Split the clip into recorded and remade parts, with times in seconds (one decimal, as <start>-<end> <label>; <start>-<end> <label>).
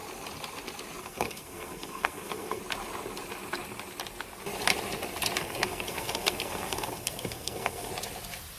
0.0-1.0 recorded; 1.0-2.6 remade; 2.6-5.4 recorded; 5.4-7.9 remade; 7.9-8.6 recorded